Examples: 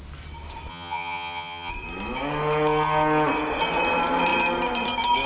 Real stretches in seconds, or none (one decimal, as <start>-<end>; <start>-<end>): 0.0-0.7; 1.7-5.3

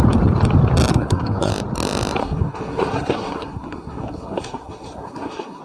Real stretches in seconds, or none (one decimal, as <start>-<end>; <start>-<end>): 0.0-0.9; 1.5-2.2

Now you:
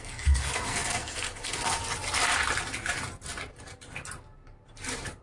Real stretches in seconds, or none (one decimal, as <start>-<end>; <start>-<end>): 1.8-5.2